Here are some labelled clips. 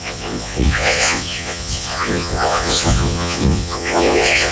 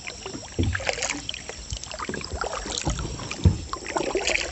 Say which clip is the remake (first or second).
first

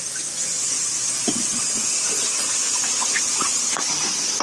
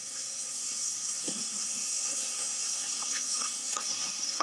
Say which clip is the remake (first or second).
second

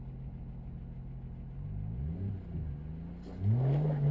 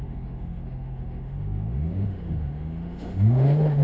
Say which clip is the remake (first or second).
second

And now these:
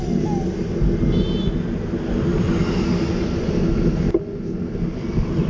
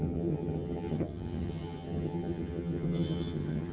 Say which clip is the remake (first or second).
second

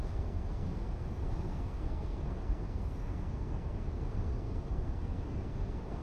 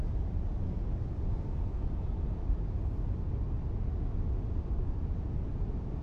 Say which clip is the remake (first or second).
first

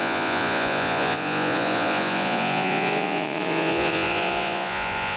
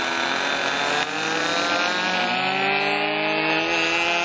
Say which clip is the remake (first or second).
first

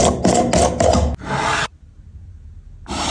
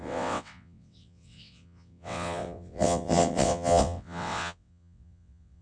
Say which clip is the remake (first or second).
second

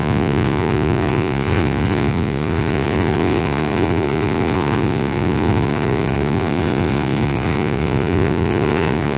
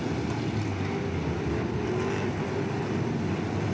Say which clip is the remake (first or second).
first